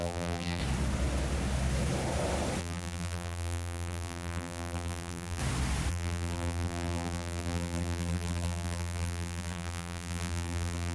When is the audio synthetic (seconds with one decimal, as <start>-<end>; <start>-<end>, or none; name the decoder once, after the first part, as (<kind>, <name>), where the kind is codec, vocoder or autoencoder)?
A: 0.0-0.6 (vocoder, BigVGAN v2); 2.6-5.4; 5.9-10.9

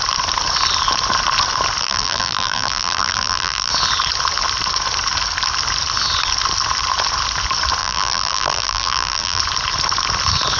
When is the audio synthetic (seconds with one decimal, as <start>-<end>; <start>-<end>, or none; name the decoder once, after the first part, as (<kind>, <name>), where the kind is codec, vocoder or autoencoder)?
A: 1.8-3.7 (vocoder, BigVGAN v2); 7.8-9.4